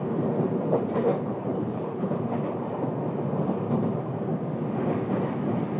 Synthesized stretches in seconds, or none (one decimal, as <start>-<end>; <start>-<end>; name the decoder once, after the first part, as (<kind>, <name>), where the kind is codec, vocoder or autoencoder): 1.1-2.2 (codec, HILCodec)